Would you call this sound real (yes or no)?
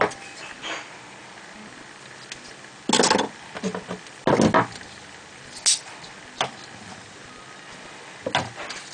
yes